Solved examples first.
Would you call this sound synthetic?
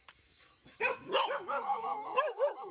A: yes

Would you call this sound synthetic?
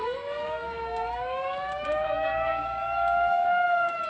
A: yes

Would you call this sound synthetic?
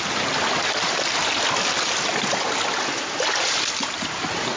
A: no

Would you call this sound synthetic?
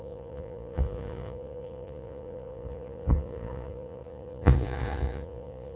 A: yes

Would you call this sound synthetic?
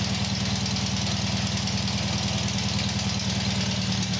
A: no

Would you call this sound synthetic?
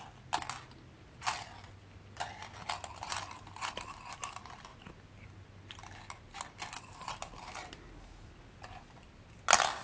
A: no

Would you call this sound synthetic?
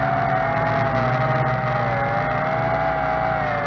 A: no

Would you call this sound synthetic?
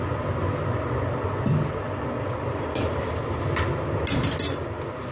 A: no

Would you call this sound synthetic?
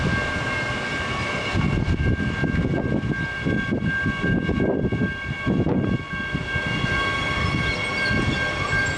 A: no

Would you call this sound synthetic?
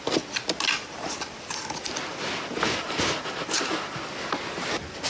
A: no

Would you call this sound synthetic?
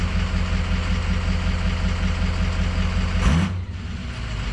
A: no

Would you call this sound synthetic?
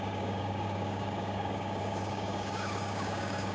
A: yes